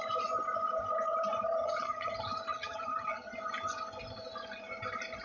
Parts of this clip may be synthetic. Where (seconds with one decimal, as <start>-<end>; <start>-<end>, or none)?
1.6-2.1; 2.5-3.3